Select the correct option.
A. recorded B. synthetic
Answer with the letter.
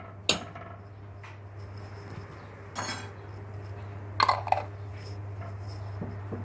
A